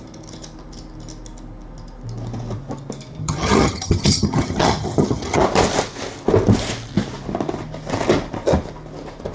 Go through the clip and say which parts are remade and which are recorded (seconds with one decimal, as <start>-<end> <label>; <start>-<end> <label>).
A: 0.0-3.2 recorded; 3.2-5.4 remade; 5.4-9.3 recorded